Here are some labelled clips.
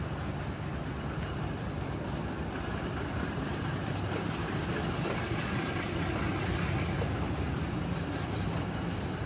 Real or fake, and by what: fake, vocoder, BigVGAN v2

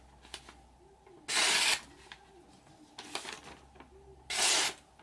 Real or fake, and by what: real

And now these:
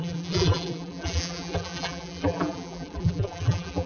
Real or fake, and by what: fake, vocoder, BigVGAN v2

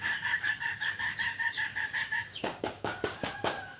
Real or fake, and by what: fake, codec, DAC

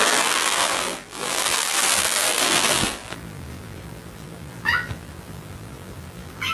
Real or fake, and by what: fake, vocoder, BigVGAN v2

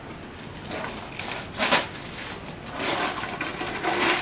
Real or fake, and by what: real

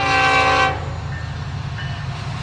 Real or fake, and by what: real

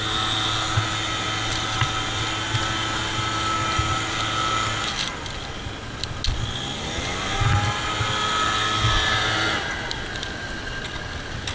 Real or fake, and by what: real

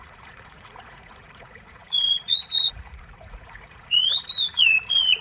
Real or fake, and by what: fake, vocoder, Vocos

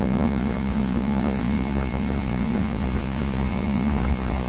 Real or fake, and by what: fake, vocoder, Vocos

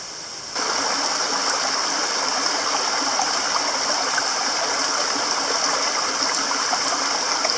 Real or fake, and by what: real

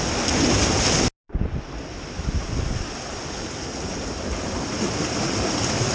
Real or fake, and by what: real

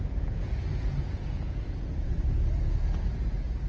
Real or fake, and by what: fake, vocoder, Vocos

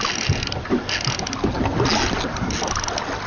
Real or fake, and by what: real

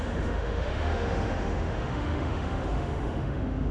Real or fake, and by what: fake, autoencoder, DAC-VAE